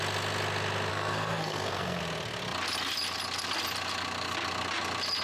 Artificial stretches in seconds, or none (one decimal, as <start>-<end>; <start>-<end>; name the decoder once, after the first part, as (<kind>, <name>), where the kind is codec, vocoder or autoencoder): 0.9-2.0 (codec, SNAC)